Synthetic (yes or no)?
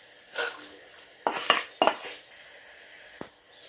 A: no